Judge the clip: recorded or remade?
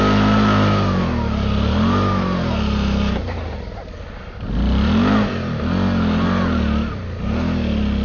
recorded